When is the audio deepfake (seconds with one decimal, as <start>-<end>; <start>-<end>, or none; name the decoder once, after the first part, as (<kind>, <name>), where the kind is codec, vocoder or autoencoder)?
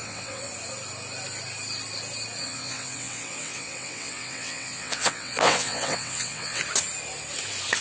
0.0-0.5 (vocoder, WaveNeXt); 2.4-6.6